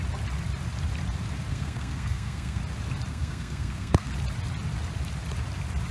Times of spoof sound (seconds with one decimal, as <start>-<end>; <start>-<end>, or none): 1.5-2.6; 3.1-4.1